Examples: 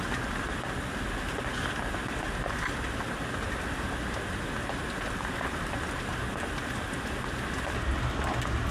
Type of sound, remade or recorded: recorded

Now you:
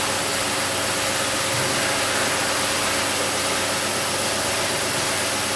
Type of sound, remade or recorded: recorded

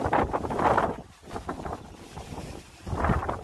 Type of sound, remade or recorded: recorded